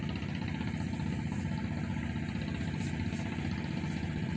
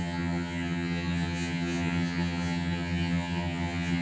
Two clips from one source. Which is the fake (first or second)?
second